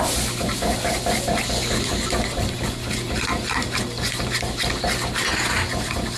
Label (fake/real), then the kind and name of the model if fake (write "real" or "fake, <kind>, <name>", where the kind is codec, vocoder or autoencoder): real